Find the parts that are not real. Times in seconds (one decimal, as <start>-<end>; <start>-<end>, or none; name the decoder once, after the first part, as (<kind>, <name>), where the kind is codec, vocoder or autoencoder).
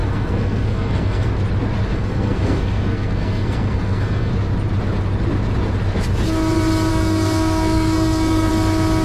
0.0-1.3 (codec, SNAC); 1.9-4.3; 6.9-8.5